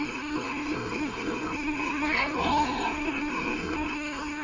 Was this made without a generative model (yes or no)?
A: no